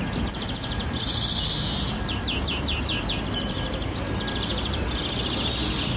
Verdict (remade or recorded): recorded